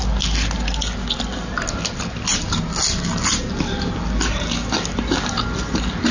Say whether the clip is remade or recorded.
recorded